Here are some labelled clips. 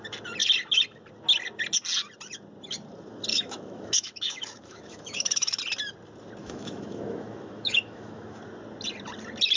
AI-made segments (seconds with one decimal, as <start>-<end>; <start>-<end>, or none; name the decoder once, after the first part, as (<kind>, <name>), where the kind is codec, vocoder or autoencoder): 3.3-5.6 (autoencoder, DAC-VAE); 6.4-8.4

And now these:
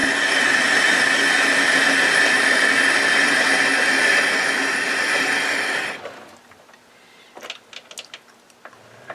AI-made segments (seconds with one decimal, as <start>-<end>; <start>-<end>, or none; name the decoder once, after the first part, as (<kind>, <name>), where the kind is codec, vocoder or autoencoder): none

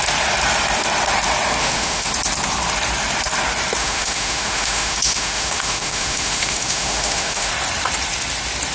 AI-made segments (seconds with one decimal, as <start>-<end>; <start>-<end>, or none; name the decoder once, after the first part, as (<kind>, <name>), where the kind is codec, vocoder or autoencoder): 1.6-2.1 (autoencoder, DAC-VAE); 3.8-7.5

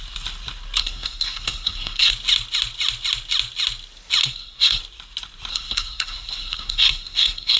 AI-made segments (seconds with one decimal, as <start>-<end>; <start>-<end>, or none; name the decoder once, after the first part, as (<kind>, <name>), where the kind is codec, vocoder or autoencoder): 0.8-2.1 (codec, SNAC); 4.2-4.8; 5.5-7.6